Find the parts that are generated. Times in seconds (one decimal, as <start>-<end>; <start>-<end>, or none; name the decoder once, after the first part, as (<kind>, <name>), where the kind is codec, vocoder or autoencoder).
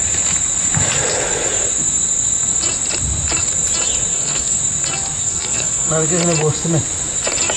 4.1-4.6 (codec, SNAC); 5.2-5.9